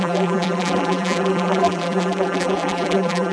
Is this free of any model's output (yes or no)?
no